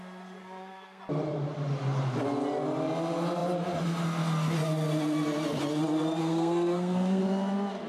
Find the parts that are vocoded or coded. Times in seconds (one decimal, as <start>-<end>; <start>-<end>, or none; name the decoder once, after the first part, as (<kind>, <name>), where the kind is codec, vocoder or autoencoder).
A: 0.4-1.0 (codec, SNAC); 6.2-7.2